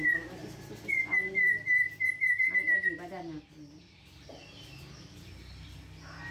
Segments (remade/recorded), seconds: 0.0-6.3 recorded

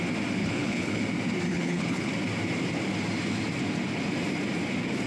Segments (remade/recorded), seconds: 0.0-0.4 recorded; 0.4-1.0 remade; 1.0-1.5 recorded; 1.5-2.1 remade; 2.1-5.1 recorded

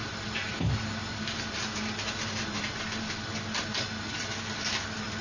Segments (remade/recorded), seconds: 0.0-5.2 recorded

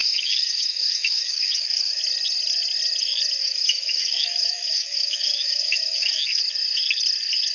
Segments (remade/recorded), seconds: 0.0-2.0 remade; 2.0-3.4 recorded; 3.4-6.4 remade; 6.4-7.5 recorded

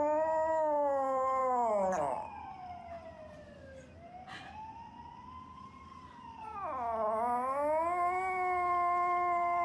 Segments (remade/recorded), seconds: 0.0-9.6 recorded

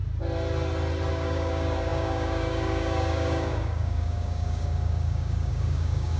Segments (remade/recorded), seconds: 0.0-1.1 recorded; 1.1-6.2 remade